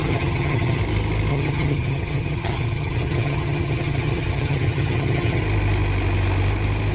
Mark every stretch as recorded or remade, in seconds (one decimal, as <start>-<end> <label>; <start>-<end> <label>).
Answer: 0.0-0.8 remade; 0.8-1.3 recorded; 1.3-5.4 remade; 5.4-6.9 recorded